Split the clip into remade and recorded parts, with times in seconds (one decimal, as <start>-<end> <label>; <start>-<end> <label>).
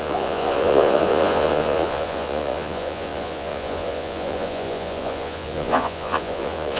0.0-6.8 remade